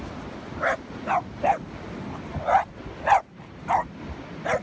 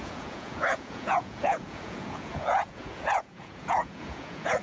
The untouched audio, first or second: first